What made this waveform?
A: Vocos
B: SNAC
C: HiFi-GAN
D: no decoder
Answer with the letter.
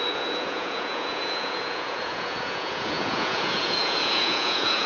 A